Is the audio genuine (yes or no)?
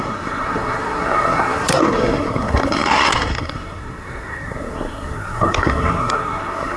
no